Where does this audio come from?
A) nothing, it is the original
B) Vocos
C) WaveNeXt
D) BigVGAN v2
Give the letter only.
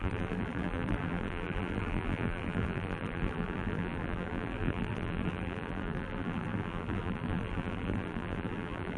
D